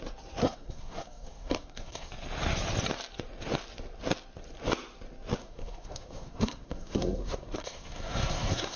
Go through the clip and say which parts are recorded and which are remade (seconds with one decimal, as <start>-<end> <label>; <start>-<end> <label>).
0.0-0.4 recorded; 0.4-2.1 remade; 2.1-5.4 recorded; 5.4-8.8 remade